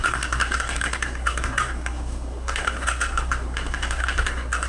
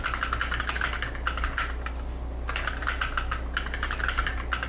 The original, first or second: second